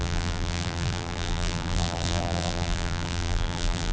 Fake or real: fake